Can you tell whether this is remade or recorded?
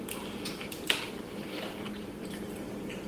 remade